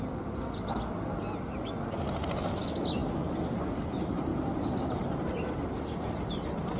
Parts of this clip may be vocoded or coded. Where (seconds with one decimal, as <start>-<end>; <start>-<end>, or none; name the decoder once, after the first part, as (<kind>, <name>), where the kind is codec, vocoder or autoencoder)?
4.3-6.2 (vocoder, BigVGAN v2)